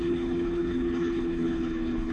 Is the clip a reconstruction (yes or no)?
yes